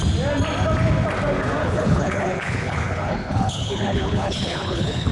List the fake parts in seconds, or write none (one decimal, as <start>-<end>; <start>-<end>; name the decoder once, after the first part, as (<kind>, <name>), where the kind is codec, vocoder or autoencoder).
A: 1.6-5.1 (codec, HILCodec)